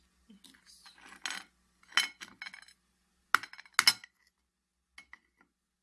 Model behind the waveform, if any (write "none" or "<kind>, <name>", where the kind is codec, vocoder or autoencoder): none